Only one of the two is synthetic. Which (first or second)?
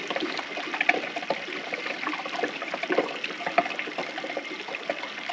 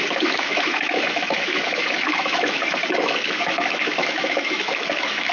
second